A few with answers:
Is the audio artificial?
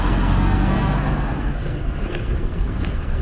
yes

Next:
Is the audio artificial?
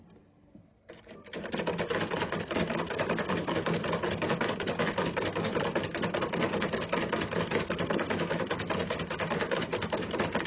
no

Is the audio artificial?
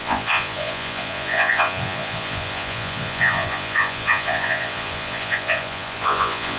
yes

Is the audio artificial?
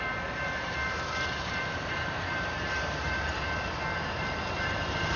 yes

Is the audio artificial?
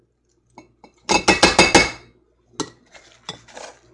no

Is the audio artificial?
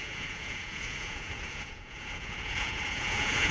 yes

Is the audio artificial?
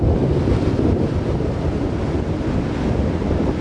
no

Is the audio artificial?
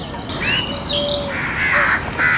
no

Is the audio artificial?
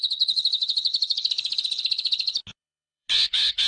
yes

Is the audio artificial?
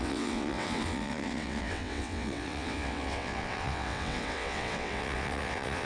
yes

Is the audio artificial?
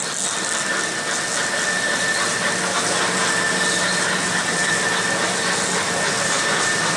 no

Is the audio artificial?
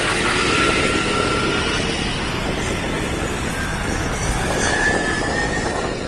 no